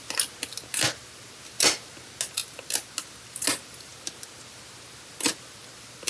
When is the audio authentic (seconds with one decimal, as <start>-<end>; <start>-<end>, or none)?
0.0-6.1